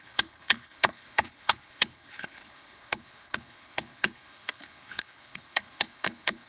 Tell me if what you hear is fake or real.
fake